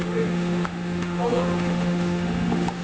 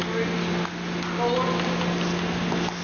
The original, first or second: second